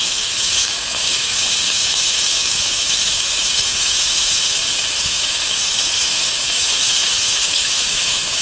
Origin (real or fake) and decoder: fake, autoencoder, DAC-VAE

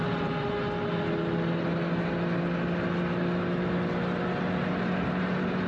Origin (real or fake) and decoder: real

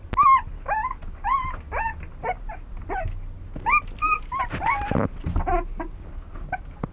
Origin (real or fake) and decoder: real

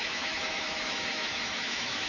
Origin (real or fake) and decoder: fake, autoencoder, DAC-VAE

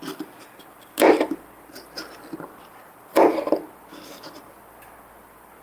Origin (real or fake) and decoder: real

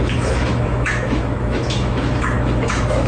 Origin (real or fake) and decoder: fake, autoencoder, DAC-VAE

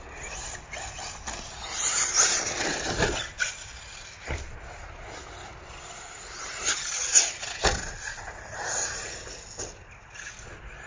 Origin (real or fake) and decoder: real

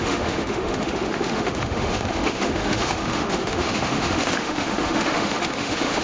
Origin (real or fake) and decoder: fake, autoencoder, DAC-VAE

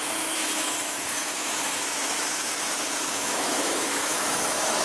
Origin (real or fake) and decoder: fake, autoencoder, DAC-VAE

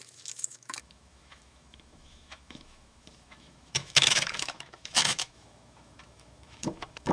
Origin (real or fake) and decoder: fake, autoencoder, DAC-VAE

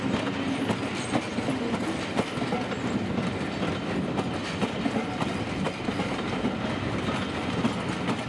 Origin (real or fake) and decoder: real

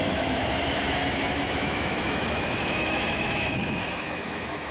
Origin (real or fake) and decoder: fake, autoencoder, DAC-VAE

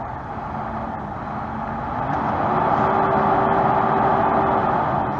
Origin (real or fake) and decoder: real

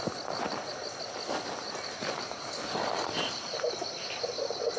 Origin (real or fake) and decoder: real